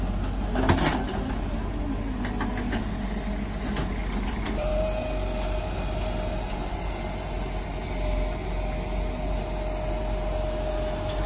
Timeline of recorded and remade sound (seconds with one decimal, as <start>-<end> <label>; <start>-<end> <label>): 0.0-4.0 recorded; 4.0-4.7 remade; 4.7-11.3 recorded